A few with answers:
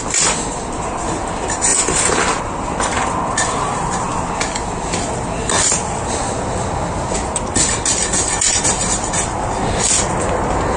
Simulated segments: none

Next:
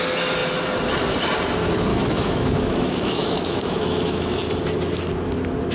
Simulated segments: 1.9-4.4

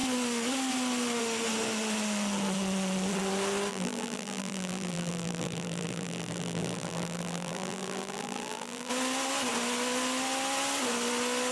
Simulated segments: 3.7-8.9